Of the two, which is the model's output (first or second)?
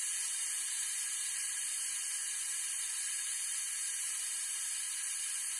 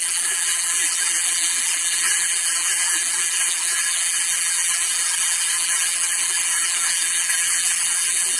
second